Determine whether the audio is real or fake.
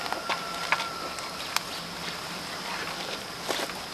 real